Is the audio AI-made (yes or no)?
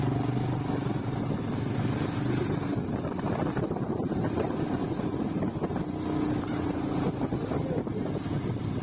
no